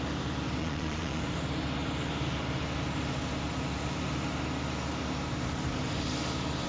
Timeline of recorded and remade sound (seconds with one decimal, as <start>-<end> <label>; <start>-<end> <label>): 0.0-0.6 recorded; 0.6-1.2 remade; 1.2-6.7 recorded